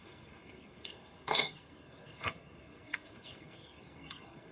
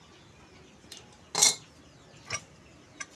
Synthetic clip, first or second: first